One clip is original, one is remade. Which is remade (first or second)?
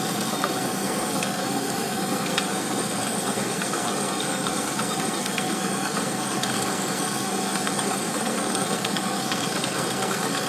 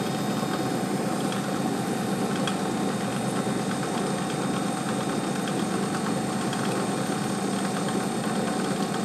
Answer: first